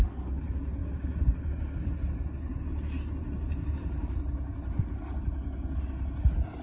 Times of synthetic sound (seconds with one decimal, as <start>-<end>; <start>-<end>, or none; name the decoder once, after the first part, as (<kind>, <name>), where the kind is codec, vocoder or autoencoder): none

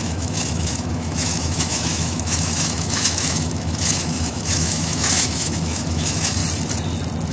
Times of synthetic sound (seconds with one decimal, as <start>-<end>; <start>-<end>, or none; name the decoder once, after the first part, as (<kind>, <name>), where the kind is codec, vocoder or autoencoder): 0.0-6.4 (autoencoder, DAC-VAE)

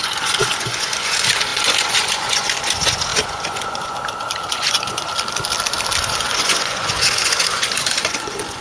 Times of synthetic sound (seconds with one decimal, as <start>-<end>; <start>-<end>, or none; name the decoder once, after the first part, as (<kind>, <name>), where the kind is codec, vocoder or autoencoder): 0.0-4.0 (vocoder, Vocos); 4.5-5.1; 6.0-8.6

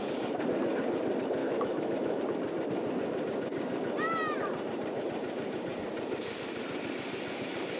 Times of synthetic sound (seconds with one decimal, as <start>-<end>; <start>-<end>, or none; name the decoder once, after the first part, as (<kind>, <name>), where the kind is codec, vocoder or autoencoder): 1.4-2.2 (autoencoder, DAC-VAE)

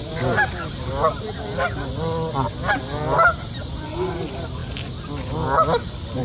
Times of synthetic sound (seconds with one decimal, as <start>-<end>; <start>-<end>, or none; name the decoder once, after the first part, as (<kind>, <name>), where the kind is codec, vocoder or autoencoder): none

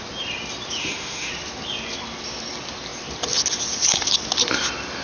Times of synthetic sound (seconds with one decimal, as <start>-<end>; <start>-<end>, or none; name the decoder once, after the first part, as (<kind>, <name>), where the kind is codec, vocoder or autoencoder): 0.8-1.3 (autoencoder, DAC-VAE)